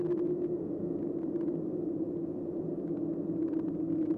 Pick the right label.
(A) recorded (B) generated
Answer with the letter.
A